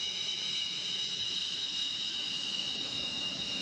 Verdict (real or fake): fake